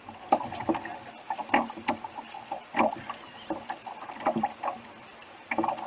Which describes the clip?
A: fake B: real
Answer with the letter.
A